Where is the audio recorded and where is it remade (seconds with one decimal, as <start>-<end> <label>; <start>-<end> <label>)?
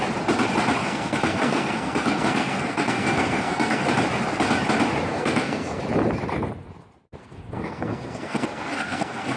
0.0-0.8 recorded; 0.8-3.9 remade; 3.9-5.1 recorded; 5.1-5.8 remade; 5.8-7.2 recorded; 7.2-9.4 remade